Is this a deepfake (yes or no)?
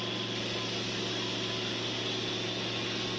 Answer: no